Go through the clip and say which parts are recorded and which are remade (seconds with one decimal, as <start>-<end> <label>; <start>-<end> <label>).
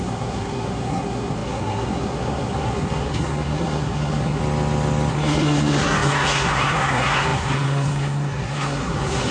0.0-4.4 remade; 4.4-5.1 recorded; 5.1-9.3 remade